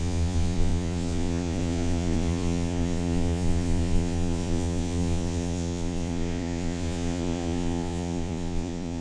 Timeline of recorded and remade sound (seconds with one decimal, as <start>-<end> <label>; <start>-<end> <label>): 0.0-9.0 remade